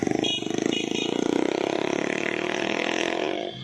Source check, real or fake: fake